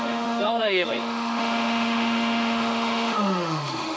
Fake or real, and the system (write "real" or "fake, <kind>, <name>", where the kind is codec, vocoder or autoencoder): fake, autoencoder, DAC-VAE